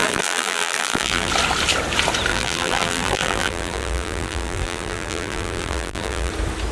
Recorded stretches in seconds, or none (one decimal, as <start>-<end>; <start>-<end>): 1.3-2.3; 6.3-6.7